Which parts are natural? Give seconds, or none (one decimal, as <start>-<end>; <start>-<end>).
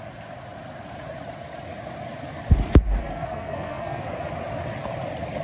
0.0-3.0; 4.0-5.4